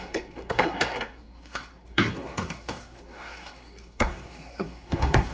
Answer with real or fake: fake